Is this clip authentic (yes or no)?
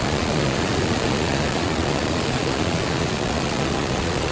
no